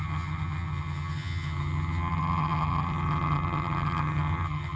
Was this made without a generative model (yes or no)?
no